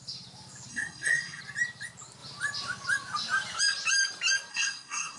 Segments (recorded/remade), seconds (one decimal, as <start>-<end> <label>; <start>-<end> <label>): 0.0-0.7 recorded; 0.7-1.4 remade; 1.4-4.5 recorded; 4.5-5.2 remade